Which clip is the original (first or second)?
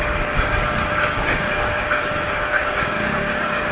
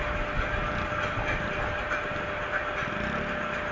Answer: second